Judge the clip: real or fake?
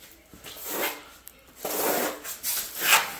real